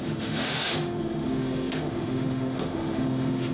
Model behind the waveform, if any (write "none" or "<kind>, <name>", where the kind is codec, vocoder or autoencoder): autoencoder, DAC-VAE